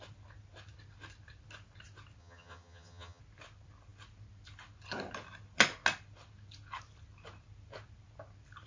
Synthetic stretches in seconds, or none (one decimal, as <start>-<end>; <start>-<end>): 2.2-3.2